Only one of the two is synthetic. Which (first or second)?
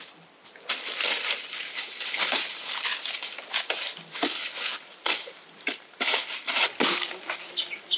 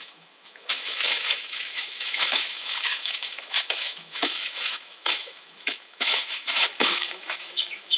second